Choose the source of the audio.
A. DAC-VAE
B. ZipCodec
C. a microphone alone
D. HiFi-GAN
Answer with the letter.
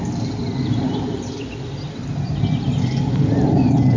C